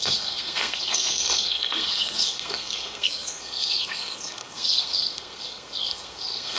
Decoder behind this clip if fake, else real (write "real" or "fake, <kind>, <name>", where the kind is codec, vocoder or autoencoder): fake, codec, SNAC